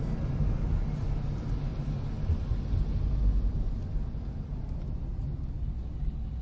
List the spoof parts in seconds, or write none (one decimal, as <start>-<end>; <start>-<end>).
none